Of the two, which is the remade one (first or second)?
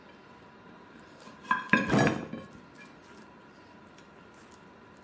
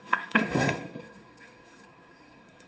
second